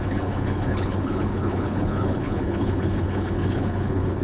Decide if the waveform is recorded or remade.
remade